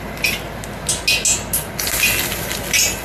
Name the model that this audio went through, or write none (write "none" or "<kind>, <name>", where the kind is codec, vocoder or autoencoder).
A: none